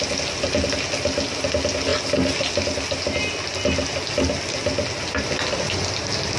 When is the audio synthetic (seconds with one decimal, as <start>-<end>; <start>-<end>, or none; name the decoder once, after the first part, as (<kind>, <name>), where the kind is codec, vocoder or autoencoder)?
none